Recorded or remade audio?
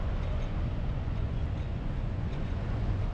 remade